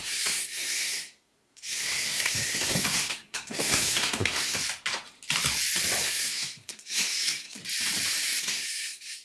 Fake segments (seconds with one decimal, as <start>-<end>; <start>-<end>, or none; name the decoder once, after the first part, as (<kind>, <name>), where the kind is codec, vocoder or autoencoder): 0.0-4.6 (codec, SNAC); 6.0-7.6; 8.4-9.2